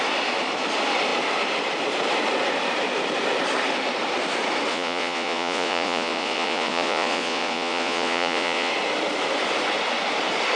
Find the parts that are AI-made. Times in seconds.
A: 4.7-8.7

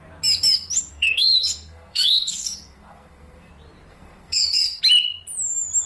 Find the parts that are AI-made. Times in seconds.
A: 0.9-3.5; 3.9-4.8

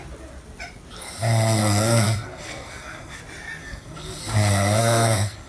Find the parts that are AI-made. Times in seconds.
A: 1.6-3.2; 3.6-5.5

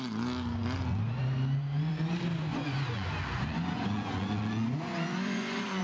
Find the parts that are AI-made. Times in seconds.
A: 2.5-5.8